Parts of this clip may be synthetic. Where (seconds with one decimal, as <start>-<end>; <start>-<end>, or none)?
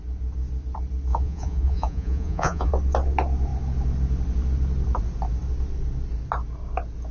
1.1-2.7